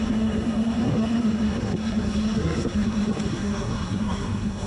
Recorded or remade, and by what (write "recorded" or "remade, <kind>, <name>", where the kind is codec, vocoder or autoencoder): remade, codec, SNAC